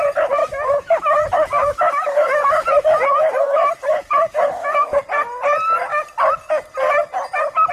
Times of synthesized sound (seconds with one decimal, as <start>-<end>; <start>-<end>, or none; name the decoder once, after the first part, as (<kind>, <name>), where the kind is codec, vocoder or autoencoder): 0.4-5.0 (autoencoder, DAC-VAE)